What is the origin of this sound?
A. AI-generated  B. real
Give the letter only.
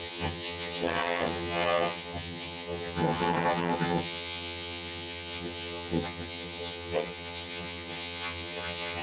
A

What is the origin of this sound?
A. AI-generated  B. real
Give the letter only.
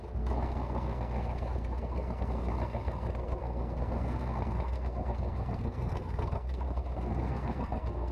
A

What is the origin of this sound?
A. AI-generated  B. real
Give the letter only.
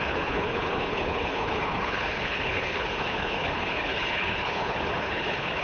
A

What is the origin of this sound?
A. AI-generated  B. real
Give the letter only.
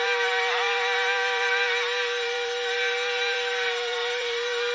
A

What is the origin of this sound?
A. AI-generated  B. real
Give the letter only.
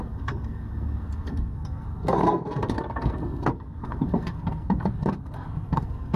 A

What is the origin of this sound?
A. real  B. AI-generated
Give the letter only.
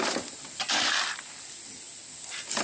A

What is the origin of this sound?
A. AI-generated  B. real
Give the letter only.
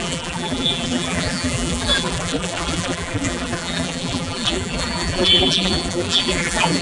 A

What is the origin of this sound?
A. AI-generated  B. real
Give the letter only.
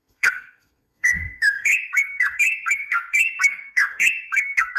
A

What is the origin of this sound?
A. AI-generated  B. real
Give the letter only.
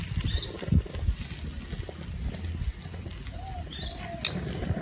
B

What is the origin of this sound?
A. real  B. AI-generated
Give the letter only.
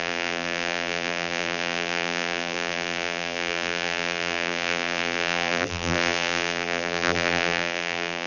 B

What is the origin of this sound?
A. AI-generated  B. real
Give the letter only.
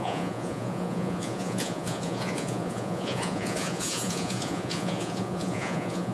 A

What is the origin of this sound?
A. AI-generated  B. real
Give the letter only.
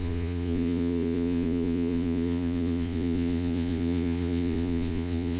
A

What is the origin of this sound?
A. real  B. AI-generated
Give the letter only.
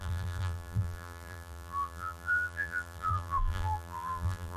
B